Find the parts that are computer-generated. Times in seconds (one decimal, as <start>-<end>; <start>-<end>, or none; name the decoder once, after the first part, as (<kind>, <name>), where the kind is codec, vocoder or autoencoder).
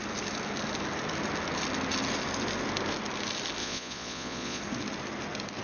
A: 3.6-4.6 (vocoder, Vocos)